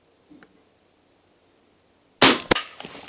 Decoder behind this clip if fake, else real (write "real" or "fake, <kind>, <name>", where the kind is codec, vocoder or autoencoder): real